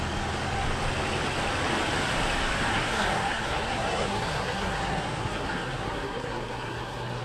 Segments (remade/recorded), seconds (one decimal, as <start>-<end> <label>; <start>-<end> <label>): 0.0-2.7 recorded; 2.7-7.2 remade